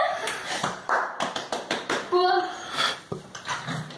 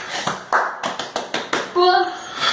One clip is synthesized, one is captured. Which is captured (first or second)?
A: second